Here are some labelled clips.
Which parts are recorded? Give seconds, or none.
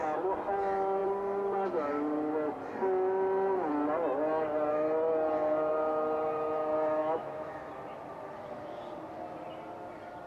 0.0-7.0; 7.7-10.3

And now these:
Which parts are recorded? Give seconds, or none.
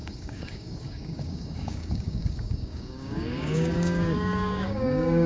none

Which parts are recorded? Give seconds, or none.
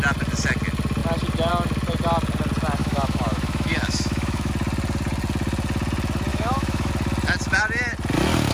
0.0-2.8; 4.5-6.3; 6.9-8.5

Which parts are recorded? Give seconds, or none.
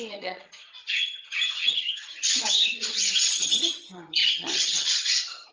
none